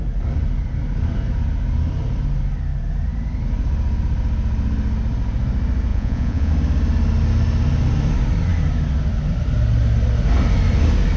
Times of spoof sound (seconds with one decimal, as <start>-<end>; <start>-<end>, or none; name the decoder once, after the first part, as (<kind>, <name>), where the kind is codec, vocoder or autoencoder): 5.9-6.5 (vocoder, Vocos)